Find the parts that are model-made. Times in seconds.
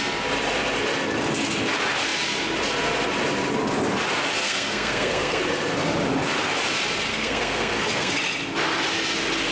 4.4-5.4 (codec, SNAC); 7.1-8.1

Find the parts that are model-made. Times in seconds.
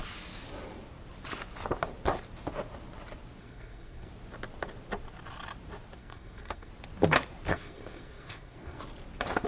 3.4-4.1 (codec, SNAC); 6.0-6.7; 7.5-8.8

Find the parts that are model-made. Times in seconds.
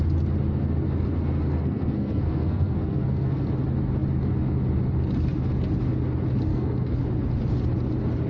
1.5-3.5 (codec, SNAC); 6.5-7.0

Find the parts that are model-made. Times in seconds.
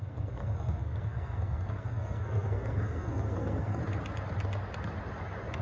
0.0-3.8 (codec, SNAC)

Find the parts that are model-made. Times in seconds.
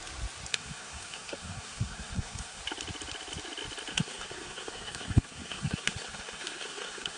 0.5-2.6 (codec, SNAC); 3.9-7.2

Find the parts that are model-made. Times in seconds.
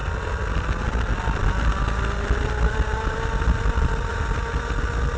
none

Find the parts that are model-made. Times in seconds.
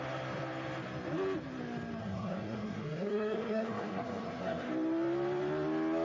2.0-4.7 (codec, SNAC)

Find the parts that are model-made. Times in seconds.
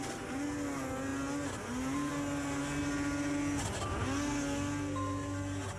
none